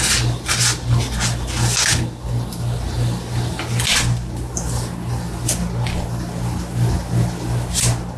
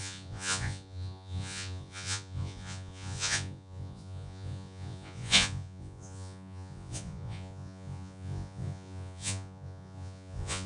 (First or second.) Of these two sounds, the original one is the first